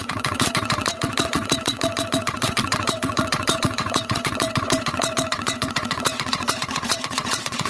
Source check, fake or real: fake